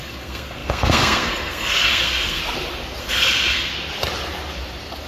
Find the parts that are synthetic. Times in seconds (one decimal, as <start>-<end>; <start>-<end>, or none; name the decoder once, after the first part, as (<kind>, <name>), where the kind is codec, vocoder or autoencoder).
0.0-2.4 (codec, SNAC); 3.0-3.7